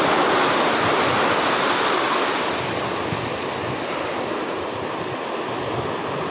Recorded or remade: recorded